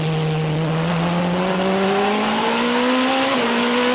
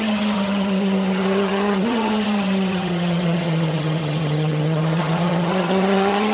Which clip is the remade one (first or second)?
second